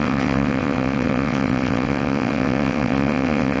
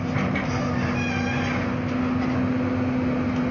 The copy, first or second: first